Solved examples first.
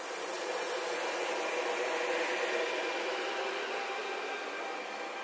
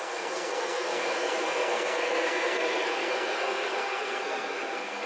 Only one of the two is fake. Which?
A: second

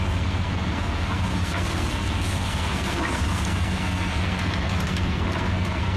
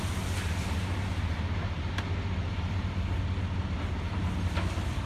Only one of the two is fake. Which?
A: first